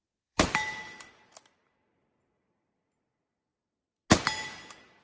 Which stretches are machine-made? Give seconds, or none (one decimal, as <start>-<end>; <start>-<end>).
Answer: 0.0-3.5